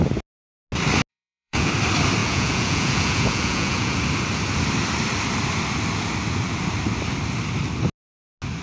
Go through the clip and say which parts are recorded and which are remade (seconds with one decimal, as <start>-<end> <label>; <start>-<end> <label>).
0.0-1.1 recorded; 1.1-1.7 remade; 1.7-2.2 recorded; 2.2-4.0 remade; 4.0-8.6 recorded